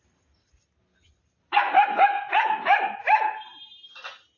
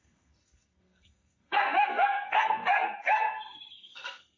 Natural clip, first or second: first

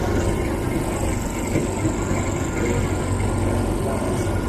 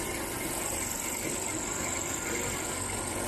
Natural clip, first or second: first